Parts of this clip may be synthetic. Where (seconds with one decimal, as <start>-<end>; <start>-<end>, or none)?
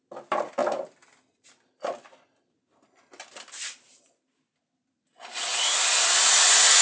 none